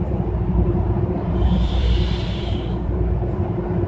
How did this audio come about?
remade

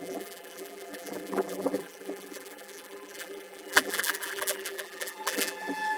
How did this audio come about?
remade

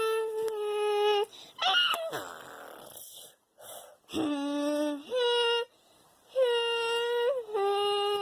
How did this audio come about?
recorded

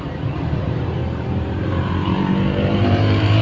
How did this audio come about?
remade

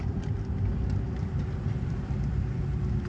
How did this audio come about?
remade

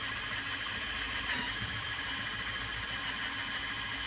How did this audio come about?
recorded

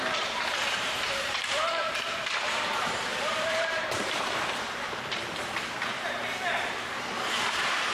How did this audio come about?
remade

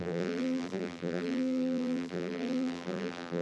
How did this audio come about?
remade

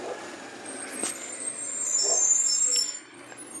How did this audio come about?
recorded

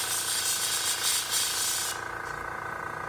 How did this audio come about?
recorded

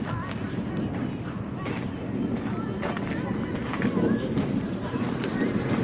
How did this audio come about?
recorded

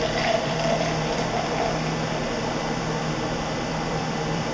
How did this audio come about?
remade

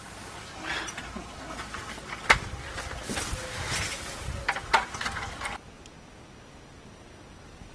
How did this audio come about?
recorded